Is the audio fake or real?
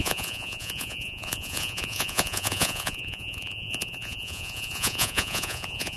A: fake